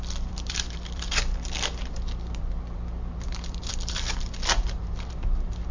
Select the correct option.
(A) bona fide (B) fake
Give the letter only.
B